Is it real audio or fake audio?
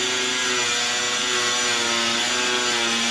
real